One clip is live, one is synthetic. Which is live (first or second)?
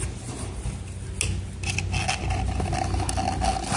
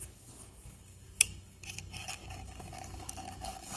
first